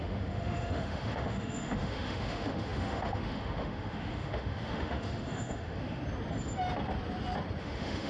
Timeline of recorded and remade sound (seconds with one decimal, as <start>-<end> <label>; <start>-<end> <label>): 0.0-6.0 remade; 6.0-7.6 recorded; 7.6-8.1 remade